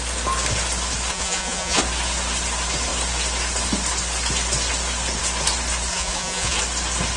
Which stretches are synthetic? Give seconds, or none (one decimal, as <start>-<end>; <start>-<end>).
1.1-1.8; 5.9-6.6